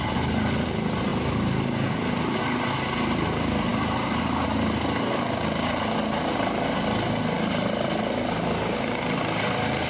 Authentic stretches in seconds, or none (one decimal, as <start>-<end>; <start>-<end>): 0.0-9.9